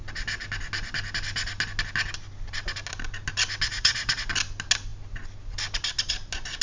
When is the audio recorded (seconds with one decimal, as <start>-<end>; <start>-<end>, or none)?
0.0-3.7; 4.3-6.6